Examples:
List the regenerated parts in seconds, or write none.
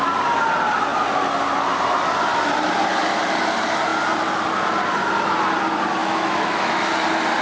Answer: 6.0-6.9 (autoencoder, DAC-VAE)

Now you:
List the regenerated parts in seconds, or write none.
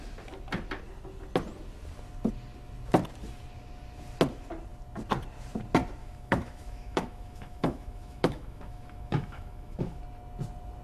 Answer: 6.0-10.0 (autoencoder, DAC-VAE)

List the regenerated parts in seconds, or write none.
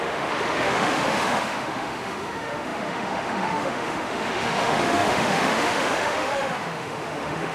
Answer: 0.0-7.5 (autoencoder, DAC-VAE)